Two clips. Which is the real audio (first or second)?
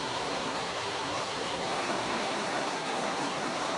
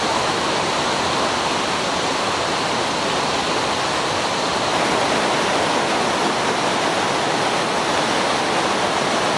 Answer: second